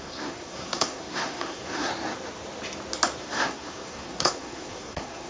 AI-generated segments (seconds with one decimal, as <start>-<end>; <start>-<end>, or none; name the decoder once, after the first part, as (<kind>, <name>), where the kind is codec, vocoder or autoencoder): 0.0-1.9 (codec, SNAC); 3.2-5.3